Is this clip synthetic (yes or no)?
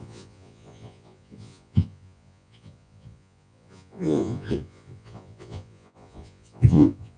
yes